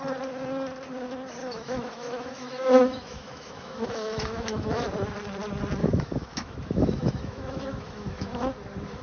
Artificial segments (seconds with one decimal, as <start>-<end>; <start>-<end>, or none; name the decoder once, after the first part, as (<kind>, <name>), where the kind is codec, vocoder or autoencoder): 1.4-4.8 (autoencoder, DAC-VAE); 5.8-8.4